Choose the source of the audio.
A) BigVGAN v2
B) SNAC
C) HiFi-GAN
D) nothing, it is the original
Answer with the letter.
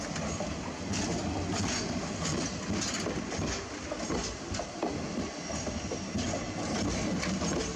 D